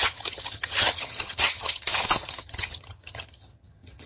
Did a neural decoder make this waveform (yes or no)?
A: yes